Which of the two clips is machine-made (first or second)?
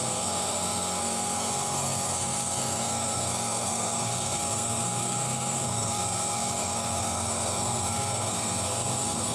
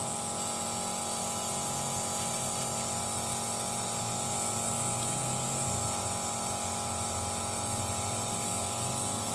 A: first